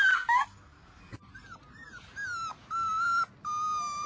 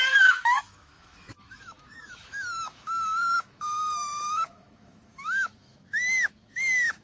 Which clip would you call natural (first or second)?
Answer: first